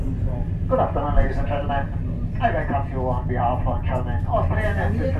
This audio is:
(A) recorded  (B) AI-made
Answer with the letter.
A